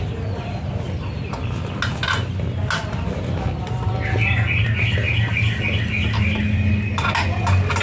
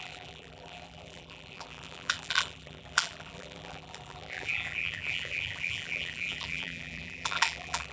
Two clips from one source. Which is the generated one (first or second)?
second